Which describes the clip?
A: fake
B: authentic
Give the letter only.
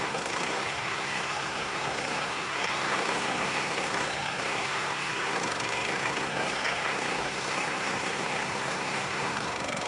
A